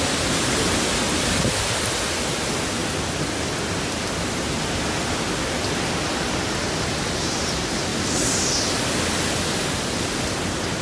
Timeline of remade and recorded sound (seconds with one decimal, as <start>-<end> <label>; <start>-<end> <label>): 0.0-10.8 recorded